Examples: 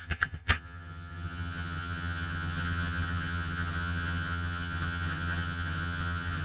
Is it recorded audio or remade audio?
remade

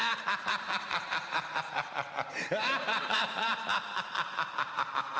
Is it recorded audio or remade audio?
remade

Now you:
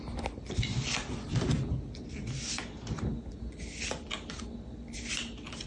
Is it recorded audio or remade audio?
recorded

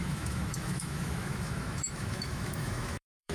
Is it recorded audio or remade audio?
remade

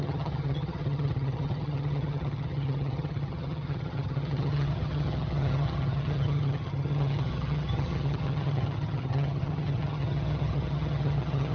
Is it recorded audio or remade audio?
remade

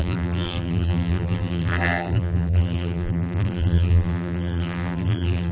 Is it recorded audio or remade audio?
remade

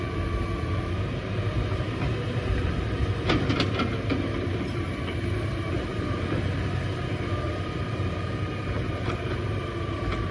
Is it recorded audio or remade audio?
remade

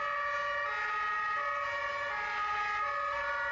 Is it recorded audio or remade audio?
recorded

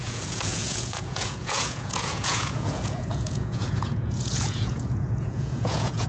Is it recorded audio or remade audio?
remade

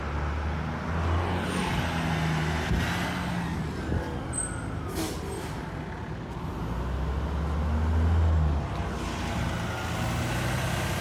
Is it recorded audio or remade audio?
recorded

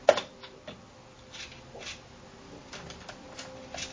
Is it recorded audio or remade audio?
recorded